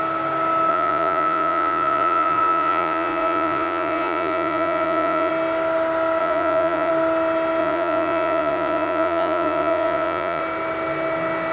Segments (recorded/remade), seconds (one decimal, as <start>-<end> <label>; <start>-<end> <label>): 0.0-0.7 recorded; 0.7-5.3 remade; 5.3-6.2 recorded; 6.2-6.9 remade; 6.9-7.6 recorded; 7.6-10.4 remade; 10.4-11.5 recorded